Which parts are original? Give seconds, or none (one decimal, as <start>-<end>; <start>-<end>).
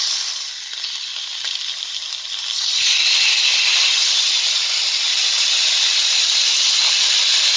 0.0-7.6